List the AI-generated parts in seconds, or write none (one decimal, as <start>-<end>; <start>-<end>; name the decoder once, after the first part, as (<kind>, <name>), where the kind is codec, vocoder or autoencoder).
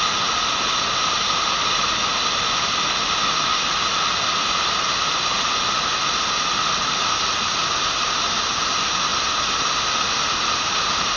none